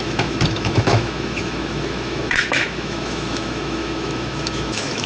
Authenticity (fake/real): fake